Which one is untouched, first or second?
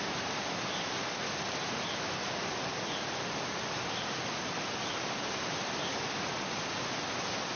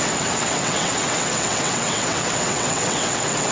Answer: first